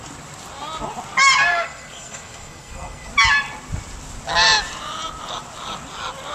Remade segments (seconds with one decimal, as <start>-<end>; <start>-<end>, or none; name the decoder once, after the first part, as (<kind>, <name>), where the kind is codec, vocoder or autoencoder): 1.5-3.1 (codec, SNAC)